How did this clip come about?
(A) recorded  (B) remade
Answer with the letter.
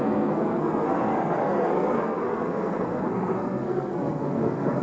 B